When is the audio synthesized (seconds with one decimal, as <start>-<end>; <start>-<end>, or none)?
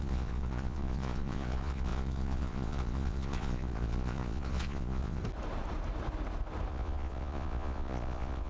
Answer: 0.0-5.2; 6.7-8.5